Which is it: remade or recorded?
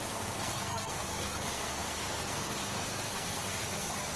remade